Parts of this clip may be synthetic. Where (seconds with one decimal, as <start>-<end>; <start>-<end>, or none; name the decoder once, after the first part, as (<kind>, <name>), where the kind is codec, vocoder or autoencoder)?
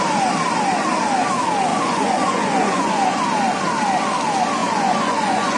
1.7-3.2 (vocoder, Vocos); 4.6-5.6